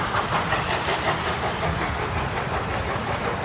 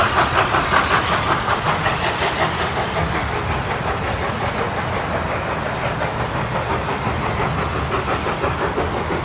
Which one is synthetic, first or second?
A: first